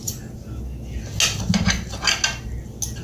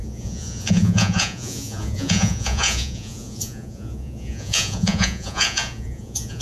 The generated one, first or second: second